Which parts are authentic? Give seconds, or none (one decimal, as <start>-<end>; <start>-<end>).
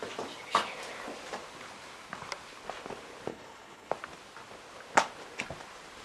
0.0-3.3; 3.9-6.0